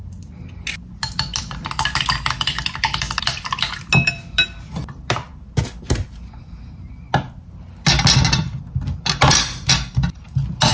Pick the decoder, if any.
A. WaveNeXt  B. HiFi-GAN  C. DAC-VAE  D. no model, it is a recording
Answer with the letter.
D